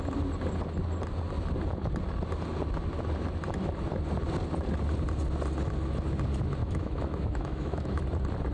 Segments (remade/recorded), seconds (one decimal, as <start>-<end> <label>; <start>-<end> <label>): 0.0-6.6 recorded; 6.6-8.0 remade; 8.0-8.5 recorded